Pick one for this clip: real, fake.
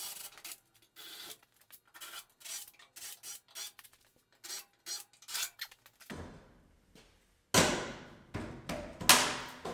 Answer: real